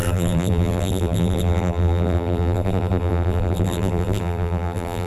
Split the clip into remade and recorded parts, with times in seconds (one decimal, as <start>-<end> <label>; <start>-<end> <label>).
0.0-5.1 remade